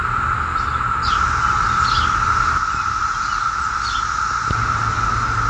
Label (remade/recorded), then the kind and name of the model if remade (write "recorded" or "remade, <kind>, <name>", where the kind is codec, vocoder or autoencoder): recorded